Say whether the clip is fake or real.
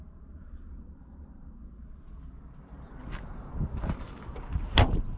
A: fake